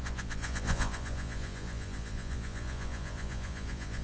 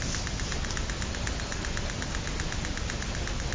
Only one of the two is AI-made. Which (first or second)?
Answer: first